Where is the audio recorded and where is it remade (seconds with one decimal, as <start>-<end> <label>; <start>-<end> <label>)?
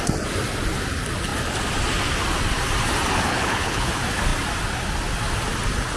0.0-3.3 recorded; 3.3-3.9 remade; 3.9-6.0 recorded